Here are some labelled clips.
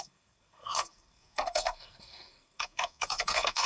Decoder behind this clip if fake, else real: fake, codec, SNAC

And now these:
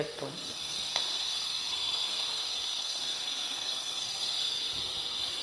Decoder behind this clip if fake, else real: fake, codec, SNAC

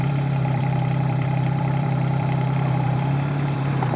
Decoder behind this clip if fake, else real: fake, vocoder, BigVGAN v2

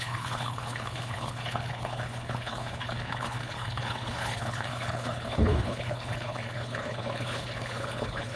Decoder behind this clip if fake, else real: fake, codec, HILCodec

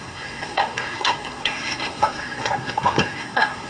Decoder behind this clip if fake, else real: fake, codec, SNAC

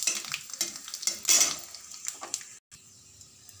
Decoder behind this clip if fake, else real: real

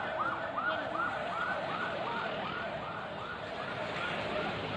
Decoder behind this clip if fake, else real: real